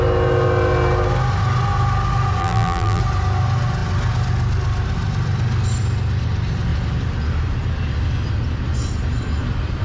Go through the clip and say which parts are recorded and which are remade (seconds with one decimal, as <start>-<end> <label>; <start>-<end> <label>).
0.0-2.4 recorded; 2.4-3.0 remade; 3.0-9.8 recorded